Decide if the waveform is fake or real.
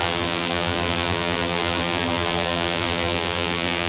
fake